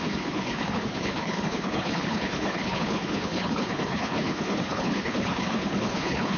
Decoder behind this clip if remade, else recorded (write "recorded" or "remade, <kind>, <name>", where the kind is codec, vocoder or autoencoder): remade, codec, HILCodec